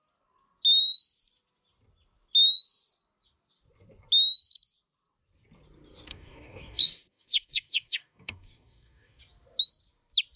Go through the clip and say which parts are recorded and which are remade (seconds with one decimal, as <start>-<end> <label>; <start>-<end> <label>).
0.0-6.1 recorded; 6.1-9.2 remade; 9.2-10.4 recorded